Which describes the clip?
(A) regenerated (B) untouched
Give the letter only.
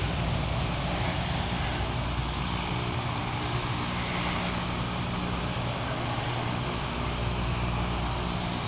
B